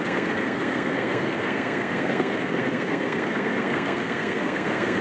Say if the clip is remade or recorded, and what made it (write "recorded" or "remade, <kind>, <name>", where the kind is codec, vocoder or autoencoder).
remade, codec, SNAC